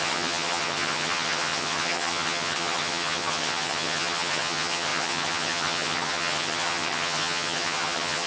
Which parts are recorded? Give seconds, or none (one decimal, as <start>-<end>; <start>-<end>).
none